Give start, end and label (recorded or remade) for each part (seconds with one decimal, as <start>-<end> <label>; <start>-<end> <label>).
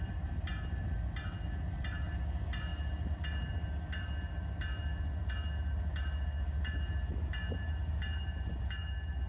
0.0-9.3 recorded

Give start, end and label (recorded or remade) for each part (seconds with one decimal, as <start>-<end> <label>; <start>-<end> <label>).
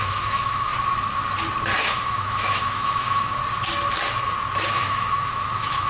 0.0-0.7 remade; 0.7-1.8 recorded; 1.8-3.4 remade; 3.4-4.7 recorded; 4.7-5.9 remade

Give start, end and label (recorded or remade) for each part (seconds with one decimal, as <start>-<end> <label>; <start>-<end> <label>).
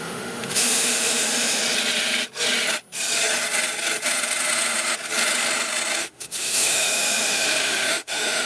0.0-1.6 remade; 1.6-6.0 recorded; 6.0-8.5 remade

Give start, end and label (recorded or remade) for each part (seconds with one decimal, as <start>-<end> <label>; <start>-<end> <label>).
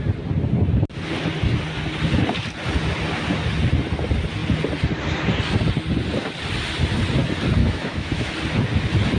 0.0-7.6 recorded; 7.6-8.3 remade; 8.3-9.2 recorded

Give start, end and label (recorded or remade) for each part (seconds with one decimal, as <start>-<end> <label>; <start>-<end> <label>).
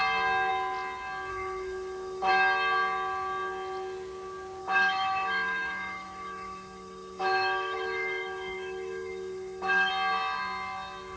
0.0-1.3 recorded; 1.3-2.3 remade; 2.3-4.6 recorded; 4.6-9.9 remade; 9.9-11.2 recorded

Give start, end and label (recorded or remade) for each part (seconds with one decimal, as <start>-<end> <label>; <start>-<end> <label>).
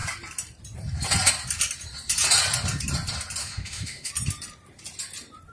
0.0-3.4 recorded; 3.4-4.1 remade; 4.1-5.5 recorded